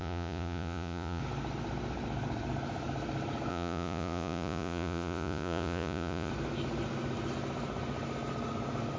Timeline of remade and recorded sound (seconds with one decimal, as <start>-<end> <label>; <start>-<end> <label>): 0.0-1.2 remade; 1.2-3.5 recorded; 3.5-6.3 remade; 6.3-9.0 recorded

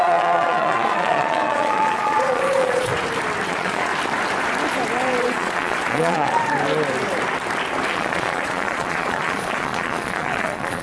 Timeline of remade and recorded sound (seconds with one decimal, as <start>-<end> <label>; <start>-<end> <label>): 0.0-2.9 remade; 2.9-3.5 recorded; 3.5-3.9 remade; 3.9-5.2 recorded; 5.2-6.4 remade; 6.4-7.9 recorded; 7.9-10.8 remade

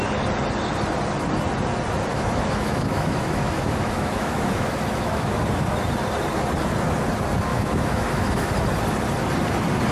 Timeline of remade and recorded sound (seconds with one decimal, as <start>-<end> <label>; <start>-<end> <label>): 0.0-2.1 recorded; 2.1-5.4 remade; 5.4-7.5 recorded; 7.5-8.5 remade; 8.5-9.9 recorded

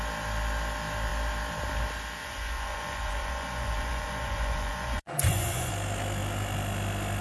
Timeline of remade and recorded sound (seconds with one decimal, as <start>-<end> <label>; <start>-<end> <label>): 0.0-2.2 recorded; 2.2-5.7 remade; 5.7-7.2 recorded